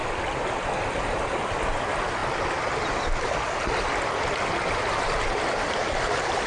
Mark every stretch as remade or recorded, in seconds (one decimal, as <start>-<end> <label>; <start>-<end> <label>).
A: 0.0-6.5 recorded